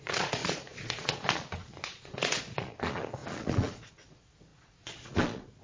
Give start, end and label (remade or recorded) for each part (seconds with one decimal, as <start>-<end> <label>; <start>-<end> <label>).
0.0-5.6 remade